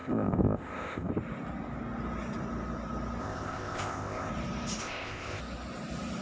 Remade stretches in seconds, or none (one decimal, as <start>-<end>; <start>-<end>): 0.0-1.1; 3.2-4.3; 4.8-5.4